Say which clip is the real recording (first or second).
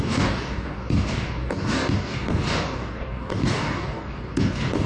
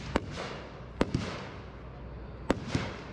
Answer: second